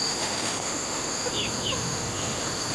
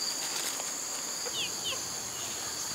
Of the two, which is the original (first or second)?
second